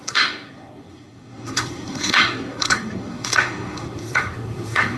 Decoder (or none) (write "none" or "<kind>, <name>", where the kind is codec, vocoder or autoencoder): codec, SNAC